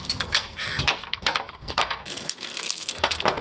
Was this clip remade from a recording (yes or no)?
yes